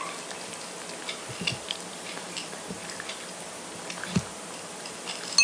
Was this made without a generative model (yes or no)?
yes